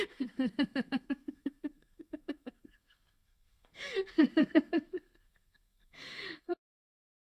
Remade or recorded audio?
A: remade